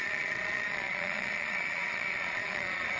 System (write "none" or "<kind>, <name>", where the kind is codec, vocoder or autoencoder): vocoder, Vocos